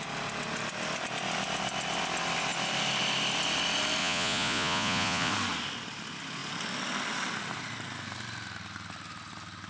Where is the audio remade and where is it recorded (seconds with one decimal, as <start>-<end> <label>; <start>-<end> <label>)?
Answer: 0.0-4.0 recorded; 4.0-5.3 remade; 5.3-9.7 recorded